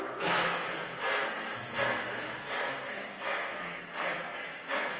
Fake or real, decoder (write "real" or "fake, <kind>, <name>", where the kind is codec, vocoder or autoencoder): fake, codec, SNAC